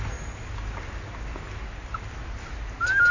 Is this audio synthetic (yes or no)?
no